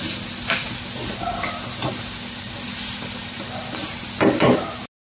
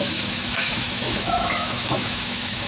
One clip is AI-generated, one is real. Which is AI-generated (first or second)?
second